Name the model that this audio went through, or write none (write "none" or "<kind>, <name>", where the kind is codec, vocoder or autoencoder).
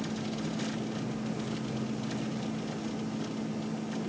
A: none